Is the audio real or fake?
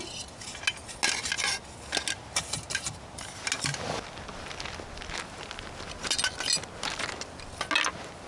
real